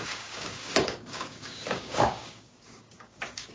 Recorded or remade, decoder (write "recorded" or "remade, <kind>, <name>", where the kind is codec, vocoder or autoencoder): remade, codec, DAC